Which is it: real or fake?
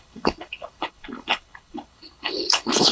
fake